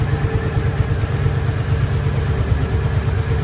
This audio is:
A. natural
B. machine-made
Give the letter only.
A